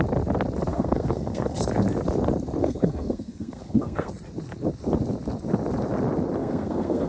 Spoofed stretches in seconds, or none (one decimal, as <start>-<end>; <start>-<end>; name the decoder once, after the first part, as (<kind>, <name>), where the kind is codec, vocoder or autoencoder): 0.7-1.6 (codec, SNAC); 2.6-4.1; 6.4-7.1